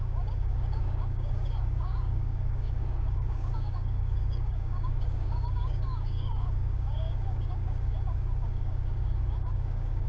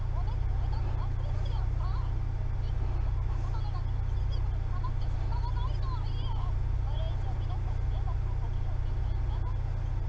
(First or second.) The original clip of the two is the second